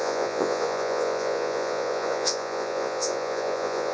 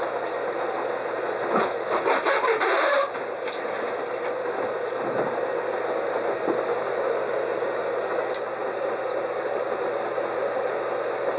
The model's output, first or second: first